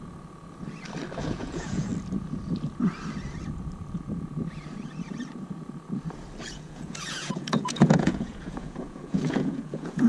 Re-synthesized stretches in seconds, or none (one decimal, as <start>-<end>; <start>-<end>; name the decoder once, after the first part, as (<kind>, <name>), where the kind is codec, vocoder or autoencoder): 1.2-1.9 (vocoder, Vocos); 6.4-10.1